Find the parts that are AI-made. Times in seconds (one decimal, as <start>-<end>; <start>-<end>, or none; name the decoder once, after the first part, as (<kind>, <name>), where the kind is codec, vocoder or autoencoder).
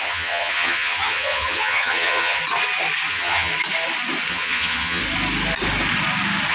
0.0-2.4 (vocoder, HiFi-GAN); 3.1-3.5; 4.3-5.0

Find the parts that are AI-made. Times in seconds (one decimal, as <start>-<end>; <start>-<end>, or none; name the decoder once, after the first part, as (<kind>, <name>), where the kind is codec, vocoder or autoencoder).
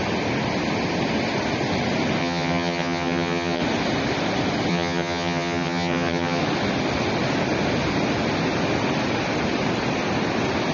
2.2-3.6 (vocoder, HiFi-GAN); 4.7-6.4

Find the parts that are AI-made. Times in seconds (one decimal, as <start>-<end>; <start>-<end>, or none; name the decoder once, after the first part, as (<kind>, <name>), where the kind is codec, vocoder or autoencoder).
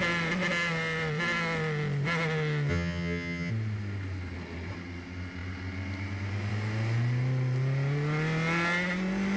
2.7-3.5 (vocoder, HiFi-GAN)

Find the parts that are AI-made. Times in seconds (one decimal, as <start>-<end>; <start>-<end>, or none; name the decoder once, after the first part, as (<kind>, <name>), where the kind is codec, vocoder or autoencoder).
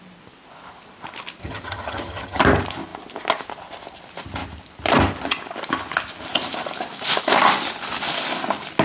1.4-2.4 (vocoder, HiFi-GAN)